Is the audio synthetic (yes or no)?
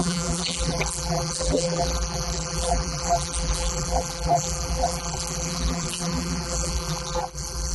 yes